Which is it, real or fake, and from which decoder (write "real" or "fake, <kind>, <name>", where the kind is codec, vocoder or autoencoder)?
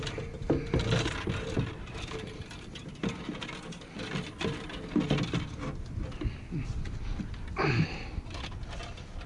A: real